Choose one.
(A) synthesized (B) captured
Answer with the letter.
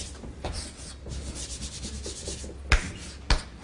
B